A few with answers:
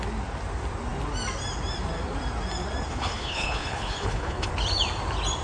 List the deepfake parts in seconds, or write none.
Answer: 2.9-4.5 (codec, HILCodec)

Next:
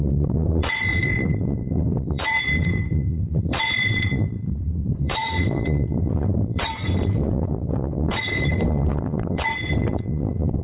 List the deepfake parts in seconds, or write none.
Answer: 0.0-10.6 (vocoder, WaveNeXt)

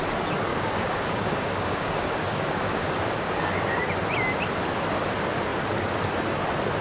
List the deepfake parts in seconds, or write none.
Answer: 0.5-3.8 (codec, DAC)